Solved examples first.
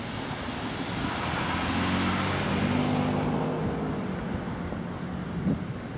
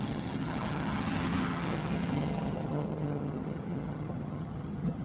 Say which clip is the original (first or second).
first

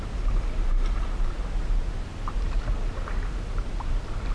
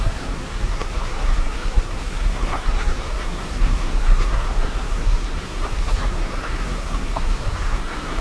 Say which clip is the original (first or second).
first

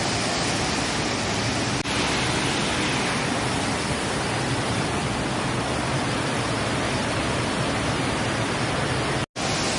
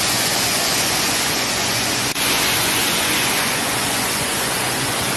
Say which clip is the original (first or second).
first